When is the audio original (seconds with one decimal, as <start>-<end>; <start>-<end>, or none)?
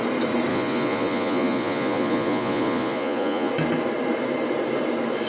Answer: 0.0-0.5; 3.5-5.3